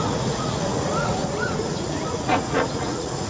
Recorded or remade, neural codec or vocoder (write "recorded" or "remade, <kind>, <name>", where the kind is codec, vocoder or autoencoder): remade, vocoder, Vocos